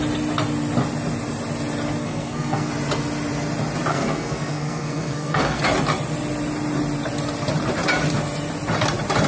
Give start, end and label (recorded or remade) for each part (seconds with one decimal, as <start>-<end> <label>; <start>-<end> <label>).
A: 0.0-2.0 recorded; 2.0-2.7 remade; 2.7-3.9 recorded; 3.9-5.6 remade; 5.6-9.3 recorded